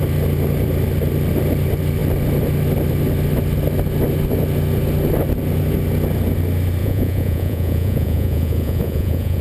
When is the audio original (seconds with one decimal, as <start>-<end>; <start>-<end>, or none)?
0.0-6.8

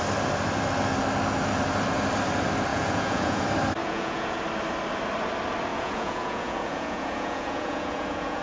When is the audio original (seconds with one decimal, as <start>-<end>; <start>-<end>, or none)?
0.0-2.7; 3.4-3.8; 4.4-5.7

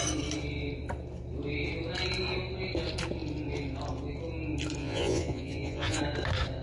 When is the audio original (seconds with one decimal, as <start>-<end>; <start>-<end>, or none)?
0.0-4.8; 6.0-6.6

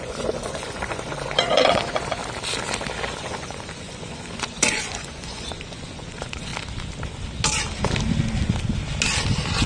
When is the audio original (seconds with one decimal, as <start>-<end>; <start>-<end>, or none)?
2.2-3.2; 6.5-9.7

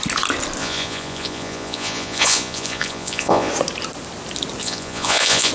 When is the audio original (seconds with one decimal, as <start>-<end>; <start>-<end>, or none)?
0.0-0.6; 3.5-4.6

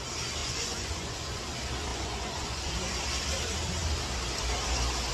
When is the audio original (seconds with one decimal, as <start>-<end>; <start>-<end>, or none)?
0.0-0.4; 1.4-1.9; 3.0-5.1